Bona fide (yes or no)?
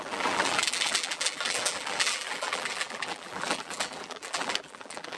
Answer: no